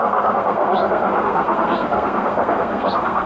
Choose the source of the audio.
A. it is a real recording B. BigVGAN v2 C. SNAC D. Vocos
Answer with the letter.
C